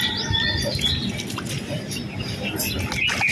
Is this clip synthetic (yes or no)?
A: no